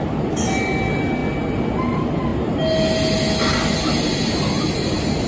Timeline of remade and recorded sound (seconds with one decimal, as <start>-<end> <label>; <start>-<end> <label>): 0.0-5.3 recorded